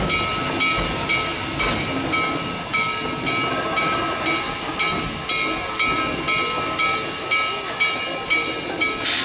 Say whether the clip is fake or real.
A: real